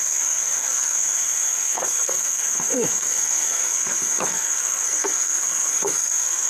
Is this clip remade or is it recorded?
remade